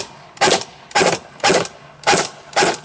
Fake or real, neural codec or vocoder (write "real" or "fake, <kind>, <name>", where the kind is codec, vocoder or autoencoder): real